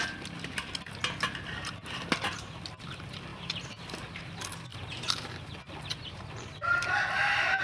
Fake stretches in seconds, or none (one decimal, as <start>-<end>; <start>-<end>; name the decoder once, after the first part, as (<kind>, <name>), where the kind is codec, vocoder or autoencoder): 3.3-4.2 (vocoder, BigVGAN v2); 4.7-5.5